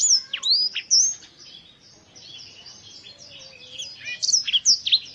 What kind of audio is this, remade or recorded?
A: recorded